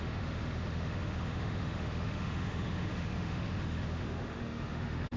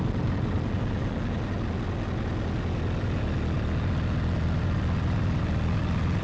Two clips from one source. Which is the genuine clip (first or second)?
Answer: second